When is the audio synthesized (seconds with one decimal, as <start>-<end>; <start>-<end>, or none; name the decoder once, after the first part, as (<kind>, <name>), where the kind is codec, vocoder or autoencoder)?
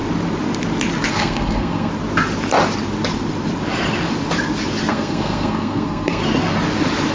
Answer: 1.1-1.9 (codec, SNAC); 4.9-6.2